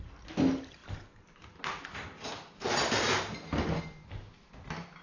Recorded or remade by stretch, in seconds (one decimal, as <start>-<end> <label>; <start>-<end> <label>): 0.0-5.0 recorded